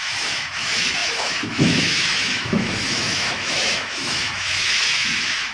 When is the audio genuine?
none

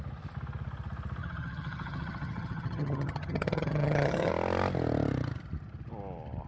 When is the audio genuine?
0.0-1.2; 4.3-6.5

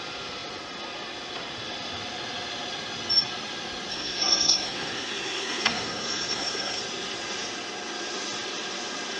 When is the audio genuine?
0.0-3.9; 6.8-9.2

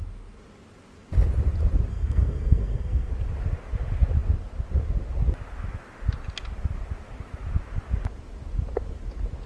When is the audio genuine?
0.0-1.9; 3.1-9.5

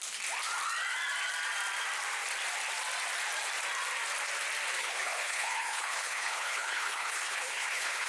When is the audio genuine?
0.0-4.8

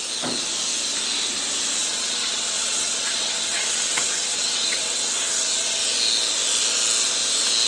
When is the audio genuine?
0.0-1.8; 5.8-7.7

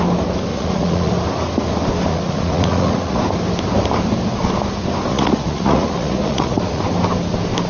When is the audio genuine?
0.0-0.5; 1.1-2.1; 3.2-5.1; 6.8-7.7

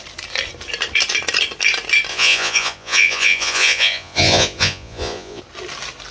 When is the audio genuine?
0.0-2.1; 5.4-6.1